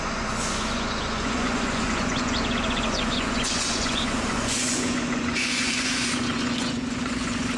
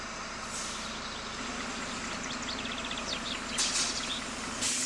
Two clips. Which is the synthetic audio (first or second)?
first